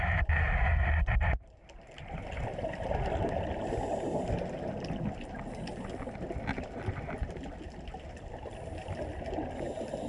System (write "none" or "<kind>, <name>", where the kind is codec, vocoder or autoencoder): none